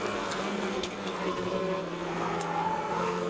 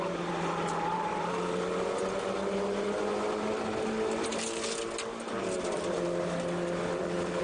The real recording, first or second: second